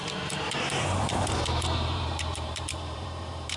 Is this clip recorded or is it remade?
remade